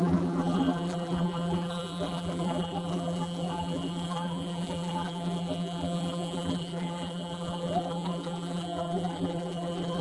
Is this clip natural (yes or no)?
no